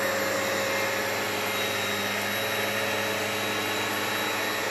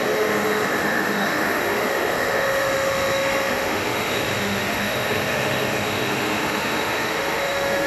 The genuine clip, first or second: first